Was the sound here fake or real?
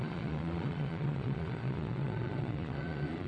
fake